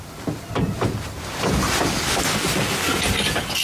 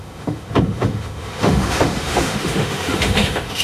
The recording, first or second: first